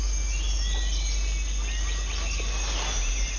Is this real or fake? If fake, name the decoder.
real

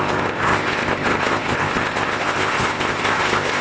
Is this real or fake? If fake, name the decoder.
fake, codec, ZipCodec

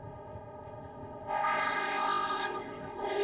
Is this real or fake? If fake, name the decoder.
fake, codec, ZipCodec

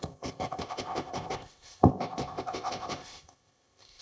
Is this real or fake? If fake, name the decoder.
fake, codec, ZipCodec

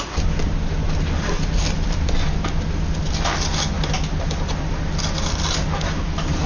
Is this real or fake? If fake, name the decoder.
real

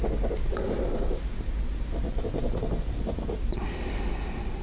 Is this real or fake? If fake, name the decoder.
real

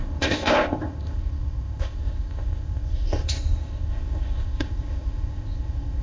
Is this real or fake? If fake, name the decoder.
fake, codec, ZipCodec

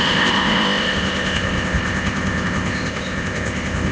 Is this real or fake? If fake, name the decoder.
fake, codec, ZipCodec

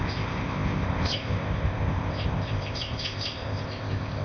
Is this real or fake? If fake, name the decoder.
fake, codec, ZipCodec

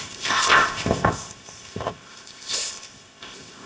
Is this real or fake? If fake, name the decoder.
fake, codec, ZipCodec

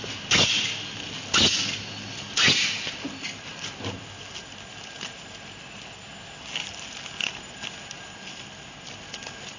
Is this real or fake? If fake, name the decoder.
real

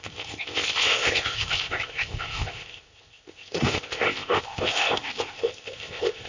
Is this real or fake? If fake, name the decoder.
fake, codec, ZipCodec